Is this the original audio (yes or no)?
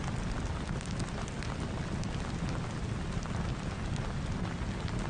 yes